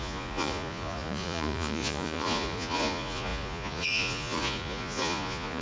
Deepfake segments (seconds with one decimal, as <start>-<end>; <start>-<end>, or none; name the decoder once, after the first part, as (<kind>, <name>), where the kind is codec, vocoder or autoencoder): 0.0-5.6 (vocoder, Vocos)